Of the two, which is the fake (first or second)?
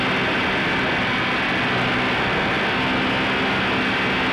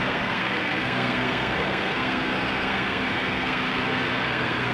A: second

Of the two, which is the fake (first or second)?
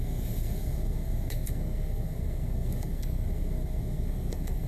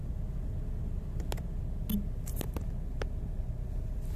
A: first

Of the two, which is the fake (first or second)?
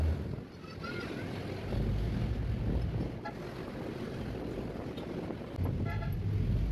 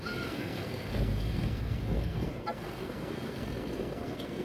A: second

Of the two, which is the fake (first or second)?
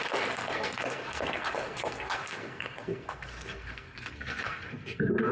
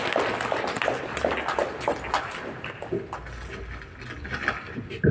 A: first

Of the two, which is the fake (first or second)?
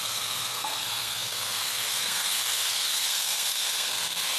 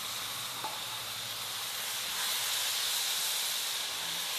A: first